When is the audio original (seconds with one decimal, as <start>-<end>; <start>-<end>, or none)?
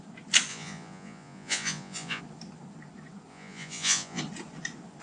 0.0-0.5; 2.2-3.3; 4.2-5.0